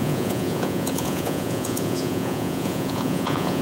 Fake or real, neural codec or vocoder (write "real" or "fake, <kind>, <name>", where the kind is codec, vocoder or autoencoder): fake, vocoder, Vocos